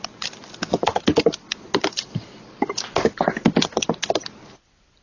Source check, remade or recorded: recorded